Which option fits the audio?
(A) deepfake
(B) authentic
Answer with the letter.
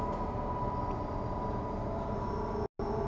B